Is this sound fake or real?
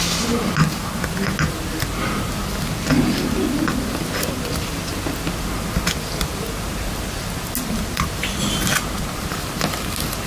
real